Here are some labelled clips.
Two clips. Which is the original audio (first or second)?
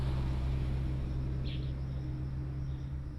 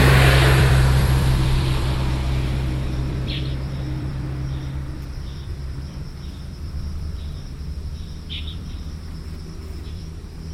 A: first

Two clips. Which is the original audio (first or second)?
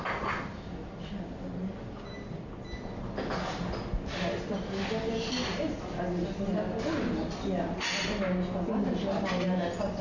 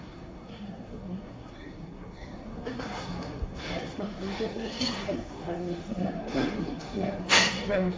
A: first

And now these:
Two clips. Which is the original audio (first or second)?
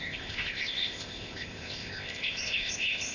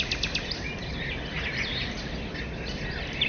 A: second